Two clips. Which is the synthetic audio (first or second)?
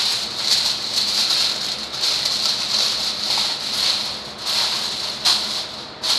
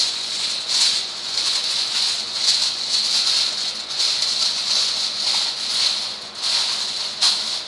second